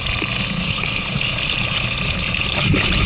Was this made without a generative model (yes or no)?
yes